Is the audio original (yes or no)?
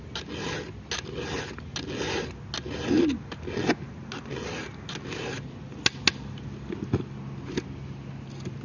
yes